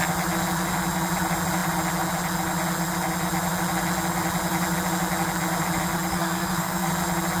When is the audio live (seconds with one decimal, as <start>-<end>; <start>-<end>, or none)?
0.0-6.1; 6.9-7.4